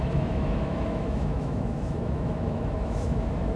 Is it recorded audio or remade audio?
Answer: remade